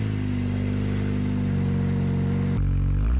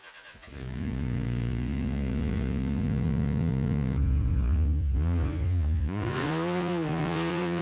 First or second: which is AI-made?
second